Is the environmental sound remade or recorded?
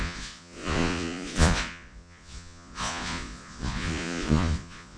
remade